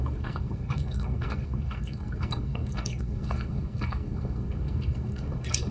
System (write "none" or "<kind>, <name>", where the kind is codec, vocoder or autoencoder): codec, SNAC